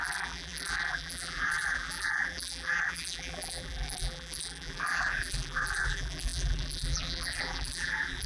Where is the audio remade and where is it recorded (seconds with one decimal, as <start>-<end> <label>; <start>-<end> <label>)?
0.0-8.3 remade